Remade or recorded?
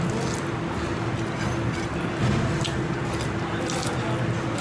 recorded